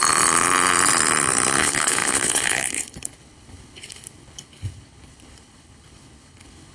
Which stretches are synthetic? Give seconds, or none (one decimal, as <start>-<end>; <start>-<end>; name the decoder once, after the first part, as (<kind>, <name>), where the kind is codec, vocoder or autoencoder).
1.6-6.7 (codec, HILCodec)